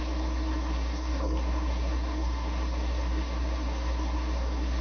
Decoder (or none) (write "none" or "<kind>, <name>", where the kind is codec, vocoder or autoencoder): codec, SNAC